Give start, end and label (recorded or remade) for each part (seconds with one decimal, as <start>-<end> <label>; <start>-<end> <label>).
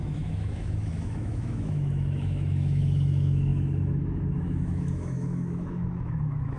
0.0-6.6 remade